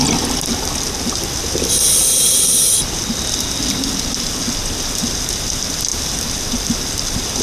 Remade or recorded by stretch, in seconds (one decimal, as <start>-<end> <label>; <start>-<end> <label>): 0.0-7.4 recorded

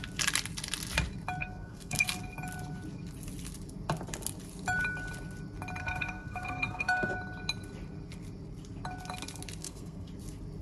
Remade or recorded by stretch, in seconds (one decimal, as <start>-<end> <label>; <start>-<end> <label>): 0.0-1.4 recorded; 1.4-2.2 remade; 2.2-5.8 recorded; 5.8-7.1 remade; 7.1-9.6 recorded; 9.6-10.1 remade; 10.1-10.6 recorded

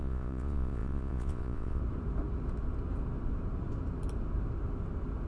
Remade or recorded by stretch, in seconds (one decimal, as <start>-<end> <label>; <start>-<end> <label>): 0.0-1.8 remade; 1.8-5.3 recorded

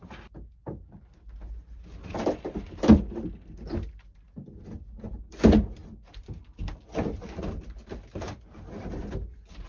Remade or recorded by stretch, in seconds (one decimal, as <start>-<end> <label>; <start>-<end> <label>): 0.0-9.7 recorded

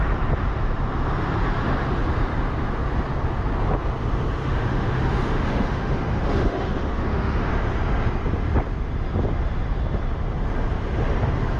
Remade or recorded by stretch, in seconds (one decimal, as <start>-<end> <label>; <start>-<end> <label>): 0.0-4.4 recorded; 4.4-7.5 remade; 7.5-11.6 recorded

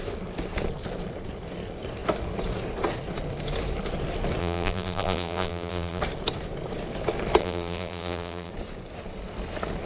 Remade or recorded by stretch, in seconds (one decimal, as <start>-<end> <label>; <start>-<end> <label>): 0.0-4.4 recorded; 4.4-6.0 remade; 6.0-7.4 recorded; 7.4-8.5 remade; 8.5-9.9 recorded

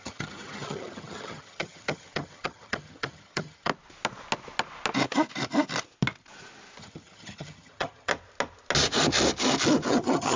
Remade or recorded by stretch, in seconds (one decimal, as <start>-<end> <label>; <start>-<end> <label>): 0.0-3.7 remade; 3.7-6.8 recorded; 6.8-8.1 remade; 8.1-9.9 recorded; 9.9-10.4 remade